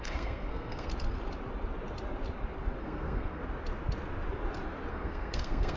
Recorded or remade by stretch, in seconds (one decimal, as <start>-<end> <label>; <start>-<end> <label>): 0.0-0.9 remade; 0.9-2.8 recorded; 2.8-3.4 remade; 3.4-4.9 recorded; 4.9-5.8 remade